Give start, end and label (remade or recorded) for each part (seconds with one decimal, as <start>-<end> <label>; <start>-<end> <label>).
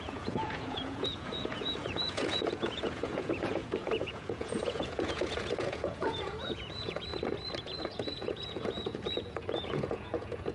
0.0-7.1 remade; 7.1-7.6 recorded; 7.6-10.5 remade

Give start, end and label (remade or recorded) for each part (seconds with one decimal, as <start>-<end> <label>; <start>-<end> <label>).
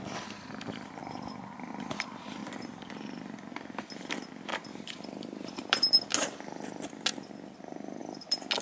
0.0-1.0 recorded; 1.0-1.7 remade; 1.7-2.4 recorded; 2.4-2.9 remade; 2.9-4.5 recorded; 4.5-6.0 remade; 6.0-8.6 recorded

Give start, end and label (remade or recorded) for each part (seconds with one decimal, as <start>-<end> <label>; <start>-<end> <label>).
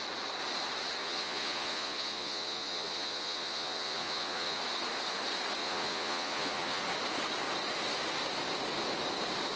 0.0-1.0 recorded; 1.0-4.6 remade; 4.6-5.6 recorded; 5.6-6.8 remade; 6.8-9.6 recorded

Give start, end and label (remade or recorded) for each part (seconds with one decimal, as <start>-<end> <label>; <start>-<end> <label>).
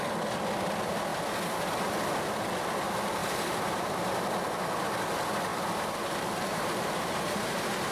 0.0-3.2 recorded; 3.2-4.0 remade; 4.0-5.5 recorded; 5.5-7.9 remade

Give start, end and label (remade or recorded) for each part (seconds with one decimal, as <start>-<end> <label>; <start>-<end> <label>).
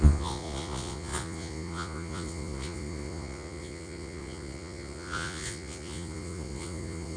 0.0-7.2 remade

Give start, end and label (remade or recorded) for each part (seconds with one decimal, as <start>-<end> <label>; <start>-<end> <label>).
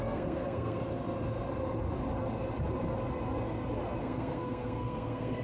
0.0-0.8 remade; 0.8-4.0 recorded; 4.0-5.4 remade